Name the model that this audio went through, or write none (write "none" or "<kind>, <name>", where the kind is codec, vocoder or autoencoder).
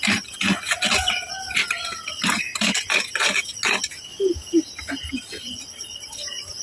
none